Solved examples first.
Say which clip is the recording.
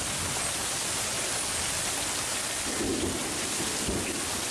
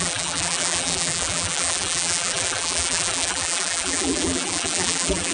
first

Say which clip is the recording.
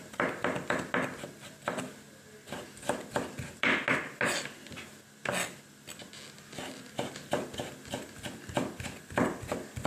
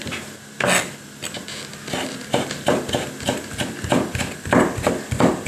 first